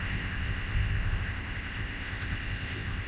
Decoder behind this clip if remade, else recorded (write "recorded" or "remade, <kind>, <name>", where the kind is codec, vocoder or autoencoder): remade, codec, ZipCodec